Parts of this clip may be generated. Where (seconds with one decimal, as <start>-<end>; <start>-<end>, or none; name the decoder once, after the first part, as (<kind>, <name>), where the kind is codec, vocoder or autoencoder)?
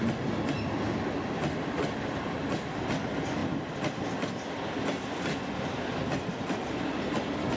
none